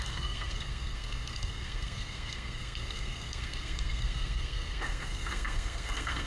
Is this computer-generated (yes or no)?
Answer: yes